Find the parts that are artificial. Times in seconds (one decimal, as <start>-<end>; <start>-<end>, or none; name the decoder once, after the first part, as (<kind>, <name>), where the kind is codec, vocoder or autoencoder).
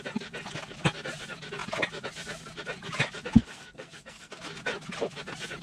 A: 3.4-4.4 (codec, SNAC)